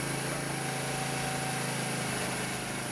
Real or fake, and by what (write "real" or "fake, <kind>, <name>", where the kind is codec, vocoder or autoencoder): real